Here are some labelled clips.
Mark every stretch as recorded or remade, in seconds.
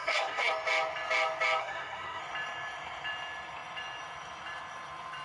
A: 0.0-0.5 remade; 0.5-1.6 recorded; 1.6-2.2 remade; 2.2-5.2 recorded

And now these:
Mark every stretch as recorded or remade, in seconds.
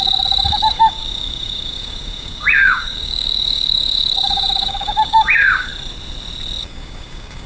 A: 0.0-5.7 remade; 5.7-6.6 recorded; 6.6-7.5 remade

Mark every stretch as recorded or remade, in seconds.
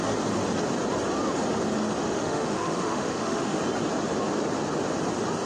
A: 0.0-2.0 recorded; 2.0-3.6 remade; 3.6-5.5 recorded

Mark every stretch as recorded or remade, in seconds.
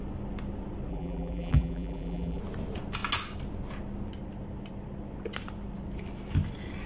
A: 0.0-0.9 recorded; 0.9-2.4 remade; 2.4-6.9 recorded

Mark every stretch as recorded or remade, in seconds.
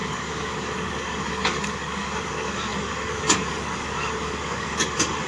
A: 0.0-5.3 remade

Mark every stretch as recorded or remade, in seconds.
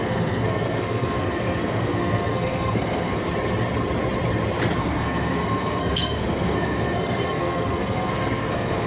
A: 0.0-3.2 remade; 3.2-4.8 recorded; 4.8-8.9 remade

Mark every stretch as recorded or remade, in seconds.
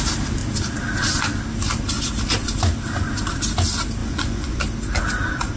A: 0.0-4.0 recorded; 4.0-4.6 remade; 4.6-5.6 recorded